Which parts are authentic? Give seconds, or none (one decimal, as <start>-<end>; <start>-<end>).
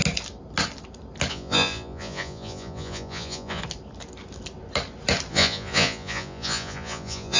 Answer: 0.0-1.3; 3.6-5.3